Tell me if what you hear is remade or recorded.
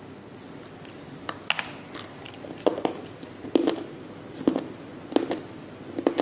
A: recorded